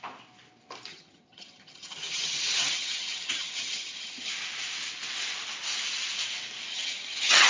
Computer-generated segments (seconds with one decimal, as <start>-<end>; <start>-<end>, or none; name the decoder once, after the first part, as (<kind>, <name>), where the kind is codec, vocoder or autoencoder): 0.9-4.3 (vocoder, HiFi-GAN); 6.7-7.5